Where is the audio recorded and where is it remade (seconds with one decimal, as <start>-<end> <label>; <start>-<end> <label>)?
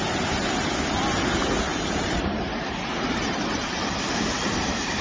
0.0-1.7 recorded; 1.7-5.0 remade